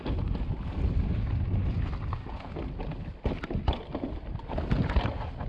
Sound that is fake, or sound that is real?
real